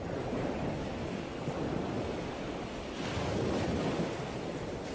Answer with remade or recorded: recorded